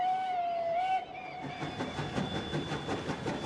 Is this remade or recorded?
recorded